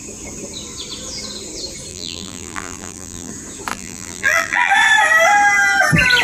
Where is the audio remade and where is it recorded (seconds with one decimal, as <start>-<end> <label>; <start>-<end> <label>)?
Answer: 0.0-1.9 recorded; 1.9-3.3 remade; 3.3-3.7 recorded; 3.7-4.7 remade; 4.7-6.2 recorded